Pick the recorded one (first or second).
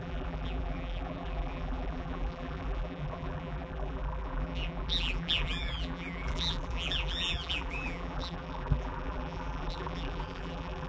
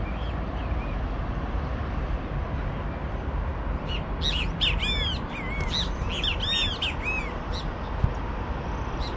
second